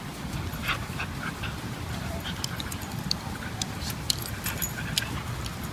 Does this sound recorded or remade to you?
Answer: remade